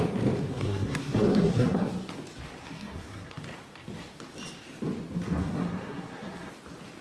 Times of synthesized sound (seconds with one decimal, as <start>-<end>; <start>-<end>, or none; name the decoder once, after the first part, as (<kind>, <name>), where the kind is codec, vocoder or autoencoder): 0.5-1.9 (codec, SNAC); 2.6-3.4; 5.4-6.5